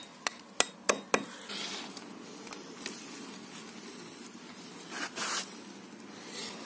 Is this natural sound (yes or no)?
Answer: yes